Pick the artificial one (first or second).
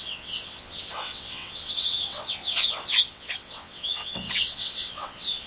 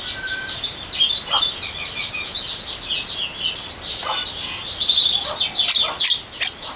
first